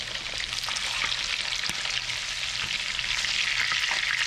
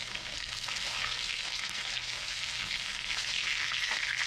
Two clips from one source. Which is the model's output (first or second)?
second